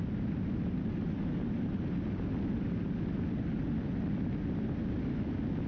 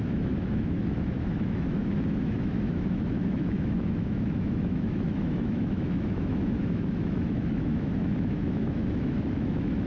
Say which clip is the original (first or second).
first